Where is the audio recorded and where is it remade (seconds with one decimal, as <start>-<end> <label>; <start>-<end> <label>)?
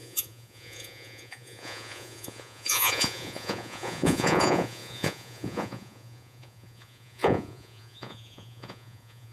0.0-9.3 remade